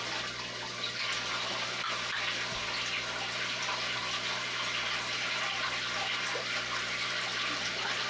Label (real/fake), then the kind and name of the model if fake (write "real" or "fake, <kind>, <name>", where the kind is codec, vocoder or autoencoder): real